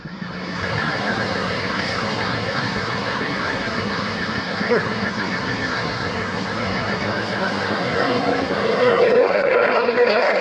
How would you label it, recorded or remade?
remade